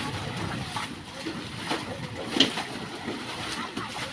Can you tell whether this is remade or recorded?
recorded